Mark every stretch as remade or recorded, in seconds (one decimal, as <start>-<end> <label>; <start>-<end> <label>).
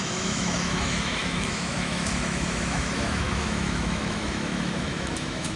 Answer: 0.0-5.6 remade